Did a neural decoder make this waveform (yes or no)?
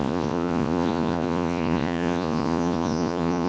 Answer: yes